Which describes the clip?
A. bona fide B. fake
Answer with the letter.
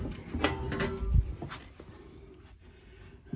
A